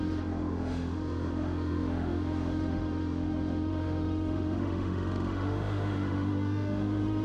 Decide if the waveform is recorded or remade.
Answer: remade